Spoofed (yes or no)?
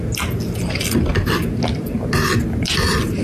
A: no